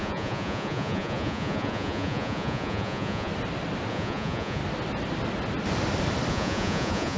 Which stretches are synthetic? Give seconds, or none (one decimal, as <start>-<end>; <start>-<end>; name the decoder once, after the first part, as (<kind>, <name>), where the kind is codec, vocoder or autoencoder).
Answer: 0.0-3.3 (vocoder, Vocos); 3.9-4.6; 6.3-7.2